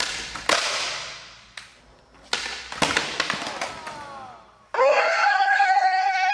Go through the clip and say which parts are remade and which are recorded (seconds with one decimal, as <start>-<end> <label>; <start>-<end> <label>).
0.0-4.8 recorded; 4.8-6.3 remade